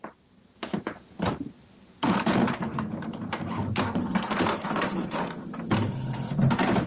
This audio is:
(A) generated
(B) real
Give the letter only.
A